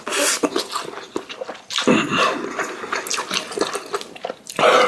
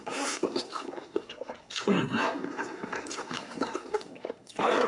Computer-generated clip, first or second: second